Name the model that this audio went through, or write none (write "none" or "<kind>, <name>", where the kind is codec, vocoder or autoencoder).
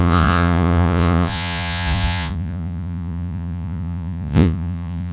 vocoder, Vocos